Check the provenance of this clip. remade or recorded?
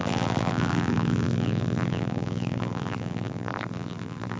remade